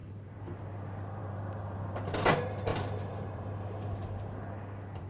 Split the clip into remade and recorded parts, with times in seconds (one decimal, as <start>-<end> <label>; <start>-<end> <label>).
0.0-0.6 remade; 0.6-1.2 recorded; 1.2-2.1 remade; 2.1-2.7 recorded; 2.7-4.4 remade; 4.4-5.1 recorded